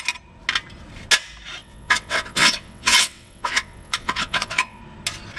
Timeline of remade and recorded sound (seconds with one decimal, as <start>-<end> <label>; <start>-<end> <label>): 0.0-1.6 recorded; 1.6-4.8 remade; 4.8-5.4 recorded